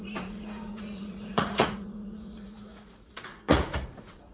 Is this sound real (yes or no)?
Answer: no